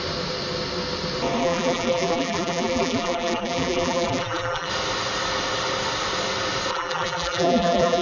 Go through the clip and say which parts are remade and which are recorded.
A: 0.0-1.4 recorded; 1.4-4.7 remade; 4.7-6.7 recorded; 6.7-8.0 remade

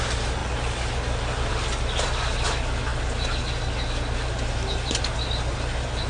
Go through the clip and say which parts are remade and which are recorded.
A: 0.0-6.1 recorded

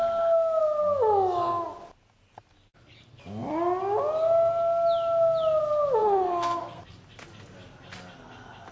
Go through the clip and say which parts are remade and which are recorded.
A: 0.0-6.0 recorded; 6.0-6.8 remade; 6.8-8.7 recorded

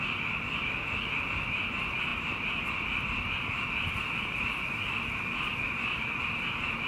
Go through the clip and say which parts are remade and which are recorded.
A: 0.0-2.1 recorded; 2.1-6.2 remade; 6.2-6.9 recorded